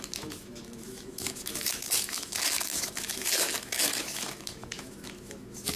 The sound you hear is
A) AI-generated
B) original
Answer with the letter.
A